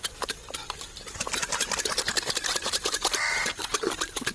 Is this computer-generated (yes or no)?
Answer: no